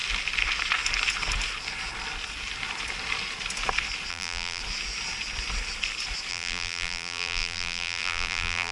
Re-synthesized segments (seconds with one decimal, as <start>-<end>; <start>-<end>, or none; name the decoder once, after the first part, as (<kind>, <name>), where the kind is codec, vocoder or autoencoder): 4.1-4.6 (vocoder, BigVGAN v2); 6.3-8.7